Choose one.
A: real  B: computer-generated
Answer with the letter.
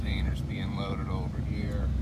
B